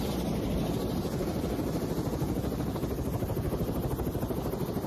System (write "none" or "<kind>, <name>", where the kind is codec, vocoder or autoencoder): none